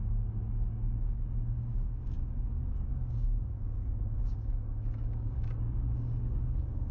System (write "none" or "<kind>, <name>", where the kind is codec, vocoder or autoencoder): codec, DAC